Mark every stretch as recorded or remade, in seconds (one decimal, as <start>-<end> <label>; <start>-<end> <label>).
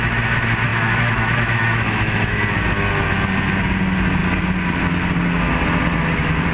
0.0-0.7 recorded; 0.7-2.4 remade; 2.4-6.5 recorded